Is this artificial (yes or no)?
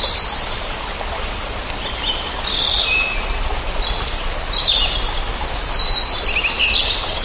no